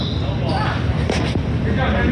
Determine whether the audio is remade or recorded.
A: recorded